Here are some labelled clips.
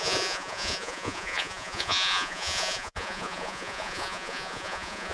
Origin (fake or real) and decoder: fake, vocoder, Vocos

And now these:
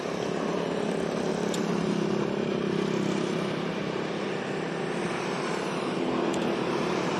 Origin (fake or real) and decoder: fake, vocoder, BigVGAN v2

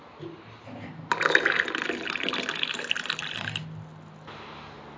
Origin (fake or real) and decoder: real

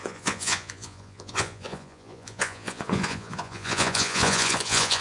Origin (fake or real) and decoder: fake, vocoder, Vocos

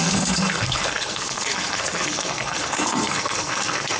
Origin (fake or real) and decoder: fake, codec, SNAC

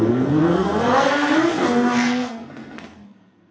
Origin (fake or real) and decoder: fake, codec, SNAC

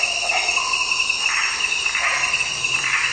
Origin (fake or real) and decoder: real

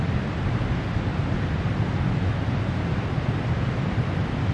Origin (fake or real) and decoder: fake, vocoder, BigVGAN v2